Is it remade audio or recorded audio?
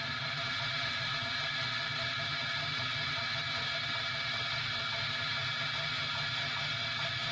remade